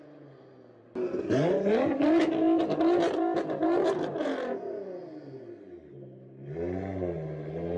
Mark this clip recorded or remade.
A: recorded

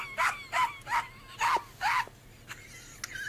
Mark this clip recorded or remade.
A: recorded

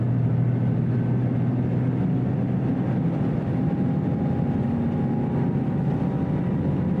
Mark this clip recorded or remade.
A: recorded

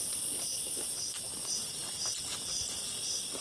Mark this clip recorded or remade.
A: recorded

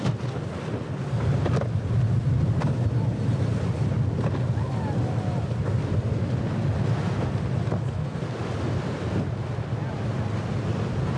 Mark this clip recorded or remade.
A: recorded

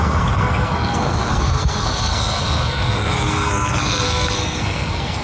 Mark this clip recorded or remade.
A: remade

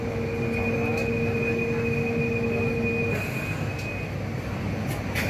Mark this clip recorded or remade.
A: recorded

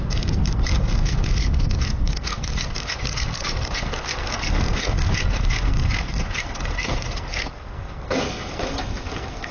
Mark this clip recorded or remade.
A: remade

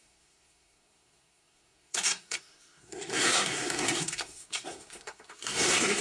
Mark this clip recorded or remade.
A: remade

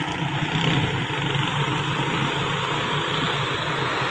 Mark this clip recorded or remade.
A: recorded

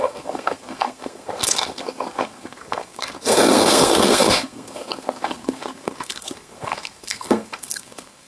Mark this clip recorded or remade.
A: remade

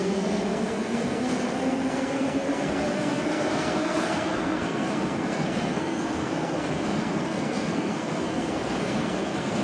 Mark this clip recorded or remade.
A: remade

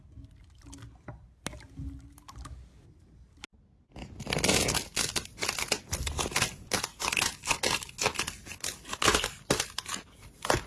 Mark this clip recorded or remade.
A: recorded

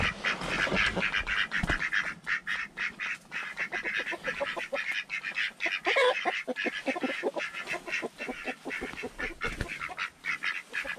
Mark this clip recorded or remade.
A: recorded